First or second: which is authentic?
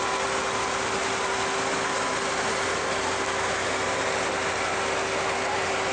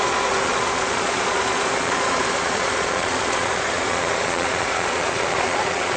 first